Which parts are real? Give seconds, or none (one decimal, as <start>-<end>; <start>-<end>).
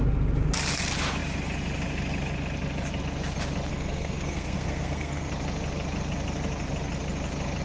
0.0-3.7; 5.3-7.6